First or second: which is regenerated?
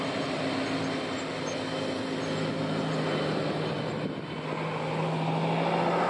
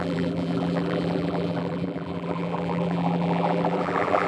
second